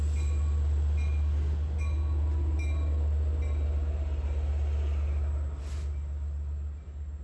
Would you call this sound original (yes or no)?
yes